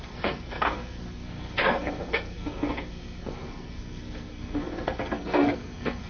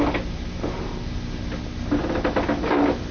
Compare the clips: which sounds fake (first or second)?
first